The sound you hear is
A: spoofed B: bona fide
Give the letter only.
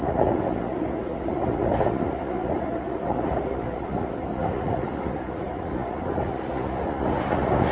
A